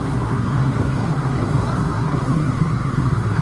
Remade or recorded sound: remade